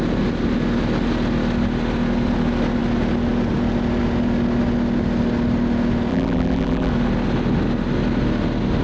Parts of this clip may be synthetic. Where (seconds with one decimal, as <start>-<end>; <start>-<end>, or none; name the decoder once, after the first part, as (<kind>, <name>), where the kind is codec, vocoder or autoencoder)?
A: 6.1-6.9 (vocoder, BigVGAN v2)